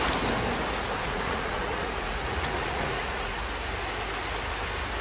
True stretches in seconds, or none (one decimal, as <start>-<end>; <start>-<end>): 0.0-1.0; 3.5-5.0